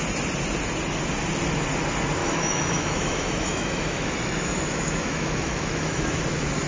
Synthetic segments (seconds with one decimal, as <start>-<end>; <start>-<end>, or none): 2.2-6.2